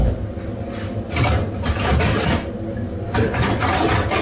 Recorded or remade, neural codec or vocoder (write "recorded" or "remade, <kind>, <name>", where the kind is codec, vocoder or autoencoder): recorded